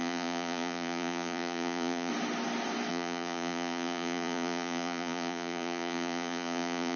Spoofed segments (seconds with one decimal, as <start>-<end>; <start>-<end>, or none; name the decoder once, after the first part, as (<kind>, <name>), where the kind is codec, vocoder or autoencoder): 0.0-2.1 (vocoder, Vocos); 2.9-7.0